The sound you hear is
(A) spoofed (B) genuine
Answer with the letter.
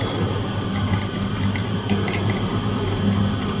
B